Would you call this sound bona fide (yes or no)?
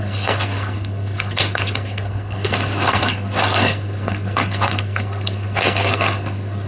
no